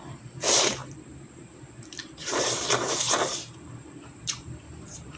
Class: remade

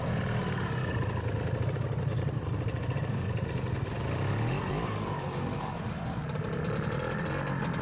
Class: recorded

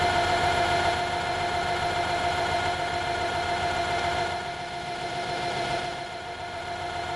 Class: remade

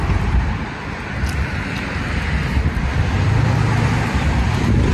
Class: recorded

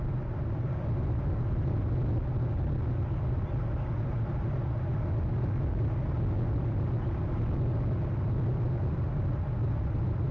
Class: recorded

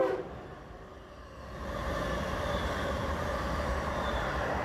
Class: remade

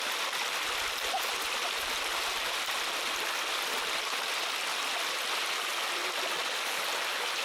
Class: recorded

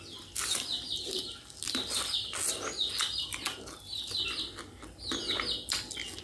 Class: recorded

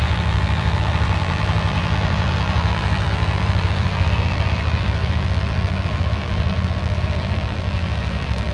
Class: remade